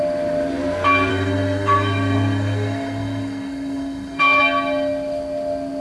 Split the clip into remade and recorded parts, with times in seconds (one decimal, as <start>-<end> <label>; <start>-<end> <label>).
0.0-1.1 recorded; 1.1-4.4 remade; 4.4-5.8 recorded